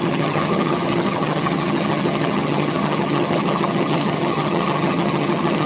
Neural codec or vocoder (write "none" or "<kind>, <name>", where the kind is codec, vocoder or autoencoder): vocoder, HiFi-GAN